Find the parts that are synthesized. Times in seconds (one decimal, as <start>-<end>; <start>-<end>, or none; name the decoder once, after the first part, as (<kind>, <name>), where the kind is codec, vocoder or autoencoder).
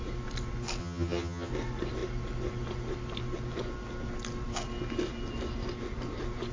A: 0.8-1.5 (vocoder, HiFi-GAN)